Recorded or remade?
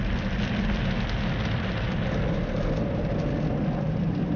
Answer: recorded